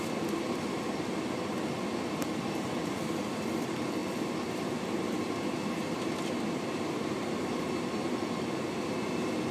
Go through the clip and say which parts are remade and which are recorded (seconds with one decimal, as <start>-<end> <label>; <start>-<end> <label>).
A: 0.0-9.5 recorded